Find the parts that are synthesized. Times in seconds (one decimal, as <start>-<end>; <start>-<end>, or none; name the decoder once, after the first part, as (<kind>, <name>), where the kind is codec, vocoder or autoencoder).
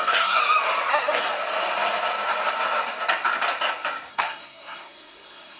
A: 0.0-0.4 (codec, SNAC); 0.9-1.3; 4.1-5.6